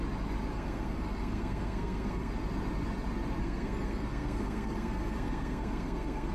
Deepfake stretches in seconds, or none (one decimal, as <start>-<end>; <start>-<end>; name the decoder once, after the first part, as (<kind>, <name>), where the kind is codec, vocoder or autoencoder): 0.5-2.3 (codec, SNAC); 3.4-6.3

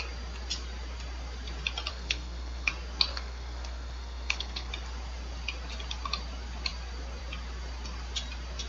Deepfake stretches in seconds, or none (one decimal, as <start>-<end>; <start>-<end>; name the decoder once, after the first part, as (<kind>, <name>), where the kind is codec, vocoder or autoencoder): 1.9-2.7 (codec, SNAC); 3.1-4.7

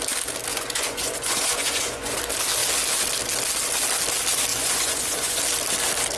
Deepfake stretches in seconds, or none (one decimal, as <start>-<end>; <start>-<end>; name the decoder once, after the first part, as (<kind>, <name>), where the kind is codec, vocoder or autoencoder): 0.5-2.2 (vocoder, Vocos); 4.5-5.4

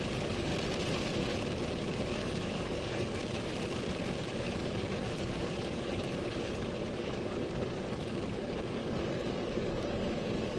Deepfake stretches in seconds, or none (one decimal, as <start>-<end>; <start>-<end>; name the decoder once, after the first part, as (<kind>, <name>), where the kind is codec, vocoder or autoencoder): 0.0-0.5 (codec, DAC); 1.9-3.2; 4.2-10.6

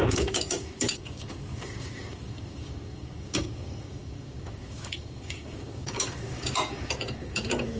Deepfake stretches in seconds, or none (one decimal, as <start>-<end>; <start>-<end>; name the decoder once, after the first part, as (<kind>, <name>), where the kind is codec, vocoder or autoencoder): 0.0-7.8 (codec, DAC)

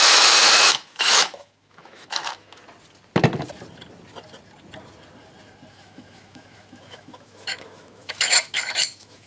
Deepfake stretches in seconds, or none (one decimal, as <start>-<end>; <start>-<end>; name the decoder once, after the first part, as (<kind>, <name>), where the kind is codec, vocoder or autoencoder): 0.0-2.6 (autoencoder, DAC-VAE); 5.7-9.3

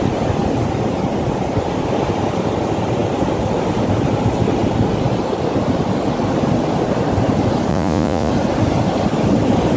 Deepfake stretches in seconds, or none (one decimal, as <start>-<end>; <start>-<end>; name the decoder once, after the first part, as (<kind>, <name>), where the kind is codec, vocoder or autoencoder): 7.7-8.3 (vocoder, Vocos)